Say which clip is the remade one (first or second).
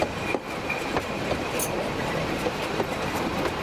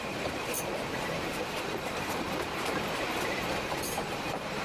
second